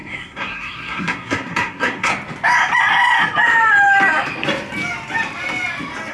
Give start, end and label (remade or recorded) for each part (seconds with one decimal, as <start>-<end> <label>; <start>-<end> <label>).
0.0-2.1 remade; 2.1-6.1 recorded